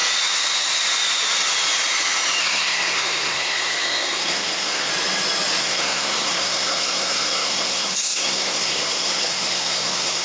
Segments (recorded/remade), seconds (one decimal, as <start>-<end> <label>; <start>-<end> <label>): 0.0-2.4 recorded; 2.4-4.9 remade; 4.9-5.6 recorded; 5.6-10.2 remade